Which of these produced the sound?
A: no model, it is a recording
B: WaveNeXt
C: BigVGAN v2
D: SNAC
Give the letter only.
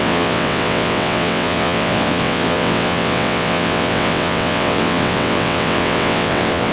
B